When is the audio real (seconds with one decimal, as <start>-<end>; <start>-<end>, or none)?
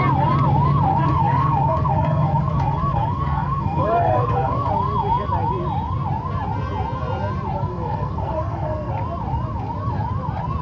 0.0-0.9; 4.7-7.7; 8.9-10.6